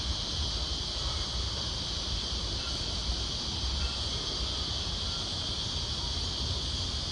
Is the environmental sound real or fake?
real